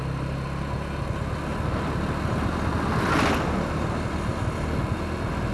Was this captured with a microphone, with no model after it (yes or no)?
yes